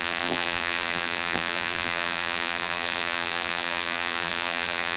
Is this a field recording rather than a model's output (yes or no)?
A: no